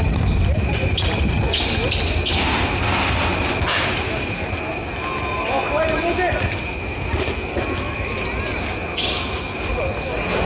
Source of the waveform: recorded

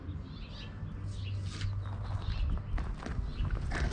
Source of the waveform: recorded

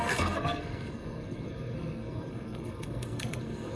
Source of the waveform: remade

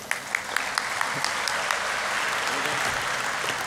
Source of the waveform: recorded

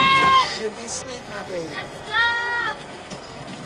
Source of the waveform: remade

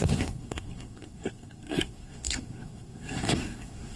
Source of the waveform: remade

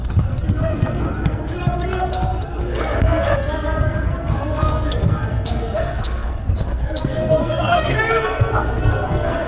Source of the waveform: remade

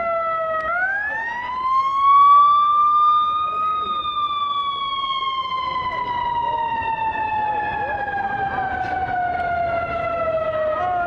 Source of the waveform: recorded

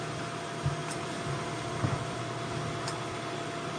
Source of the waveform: recorded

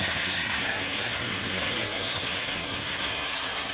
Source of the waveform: remade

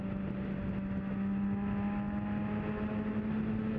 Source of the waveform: recorded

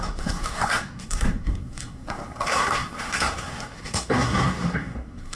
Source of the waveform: remade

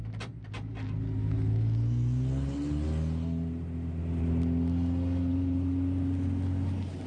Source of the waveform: recorded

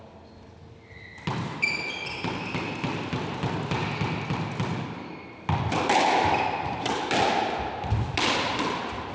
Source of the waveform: recorded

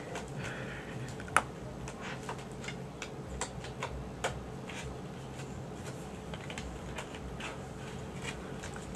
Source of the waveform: recorded